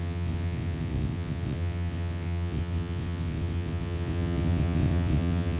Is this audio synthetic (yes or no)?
yes